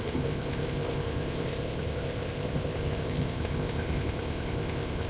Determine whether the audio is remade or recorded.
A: remade